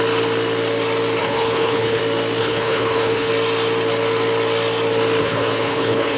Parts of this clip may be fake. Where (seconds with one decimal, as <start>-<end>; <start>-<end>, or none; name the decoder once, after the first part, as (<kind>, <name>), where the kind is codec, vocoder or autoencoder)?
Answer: 1.2-2.0 (codec, HILCodec); 2.4-3.3; 5.2-6.2